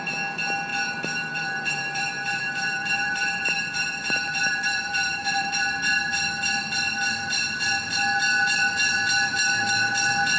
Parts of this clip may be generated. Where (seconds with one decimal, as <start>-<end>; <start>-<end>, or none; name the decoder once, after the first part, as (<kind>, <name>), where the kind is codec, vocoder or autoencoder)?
0.7-5.5 (vocoder, BigVGAN v2)